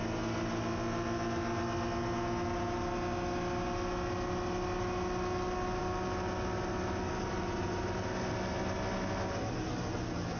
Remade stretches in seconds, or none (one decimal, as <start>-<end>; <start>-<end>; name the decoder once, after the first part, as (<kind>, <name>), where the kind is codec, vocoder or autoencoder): none